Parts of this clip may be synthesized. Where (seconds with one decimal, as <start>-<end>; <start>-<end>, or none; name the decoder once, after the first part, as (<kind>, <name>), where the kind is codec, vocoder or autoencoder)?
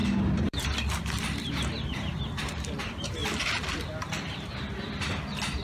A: 0.0-1.5 (vocoder, BigVGAN v2); 3.2-4.6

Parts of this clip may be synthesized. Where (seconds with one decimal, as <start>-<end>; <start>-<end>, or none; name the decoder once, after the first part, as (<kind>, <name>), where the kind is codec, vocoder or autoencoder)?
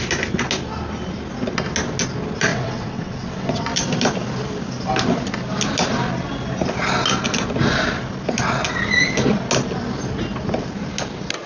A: 2.5-3.7 (vocoder, WaveNeXt)